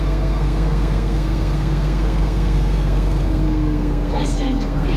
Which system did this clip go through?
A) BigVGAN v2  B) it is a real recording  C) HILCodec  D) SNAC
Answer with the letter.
D